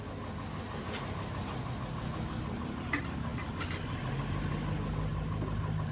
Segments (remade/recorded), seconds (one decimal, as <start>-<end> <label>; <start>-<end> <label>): 0.0-5.9 recorded